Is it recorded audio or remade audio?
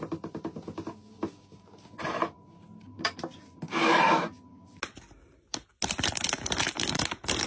recorded